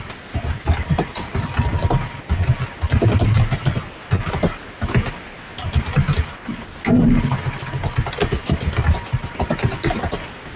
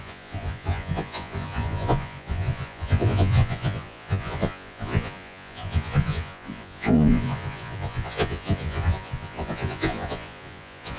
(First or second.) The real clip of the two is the first